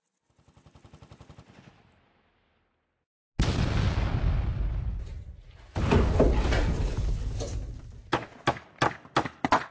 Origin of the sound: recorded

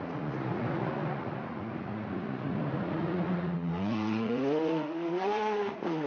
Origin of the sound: remade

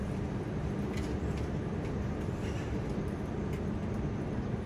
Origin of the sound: recorded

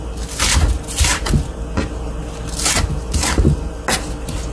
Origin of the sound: recorded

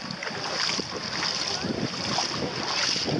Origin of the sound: recorded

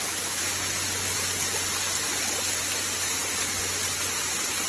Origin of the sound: recorded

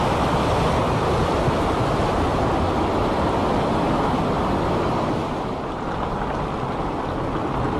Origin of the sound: recorded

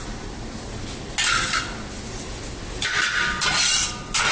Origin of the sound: recorded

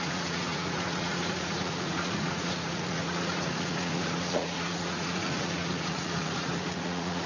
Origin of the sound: remade